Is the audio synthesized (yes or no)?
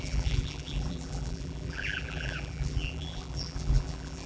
yes